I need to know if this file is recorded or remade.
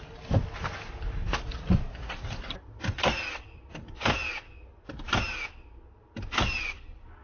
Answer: recorded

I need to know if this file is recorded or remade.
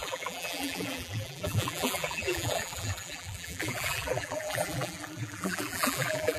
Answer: remade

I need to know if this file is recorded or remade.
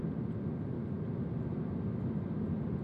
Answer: recorded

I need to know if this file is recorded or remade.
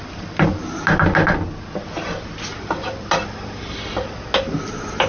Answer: recorded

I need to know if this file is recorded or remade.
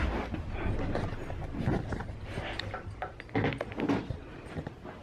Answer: recorded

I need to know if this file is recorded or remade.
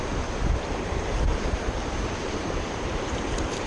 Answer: remade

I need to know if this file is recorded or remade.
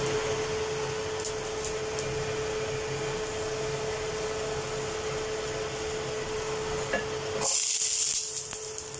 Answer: recorded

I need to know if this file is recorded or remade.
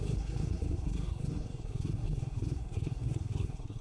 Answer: remade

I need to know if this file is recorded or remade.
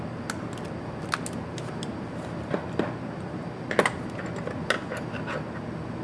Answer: recorded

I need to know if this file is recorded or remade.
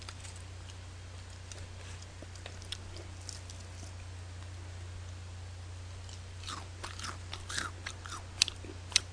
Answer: recorded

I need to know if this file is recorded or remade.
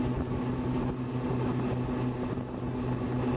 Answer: recorded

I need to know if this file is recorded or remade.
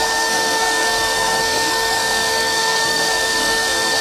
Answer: remade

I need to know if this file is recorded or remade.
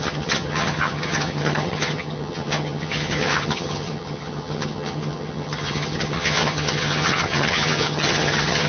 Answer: remade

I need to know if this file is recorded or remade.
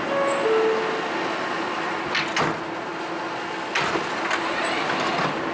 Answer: recorded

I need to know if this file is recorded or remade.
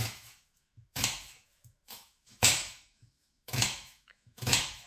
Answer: remade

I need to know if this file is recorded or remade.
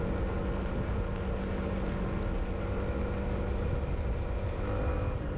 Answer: recorded